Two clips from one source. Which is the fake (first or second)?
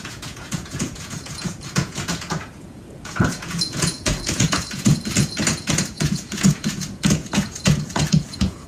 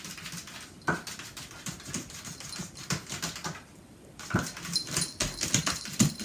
first